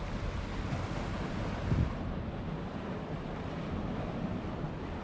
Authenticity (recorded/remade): recorded